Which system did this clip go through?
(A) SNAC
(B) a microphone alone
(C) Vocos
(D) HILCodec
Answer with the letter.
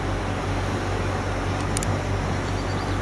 B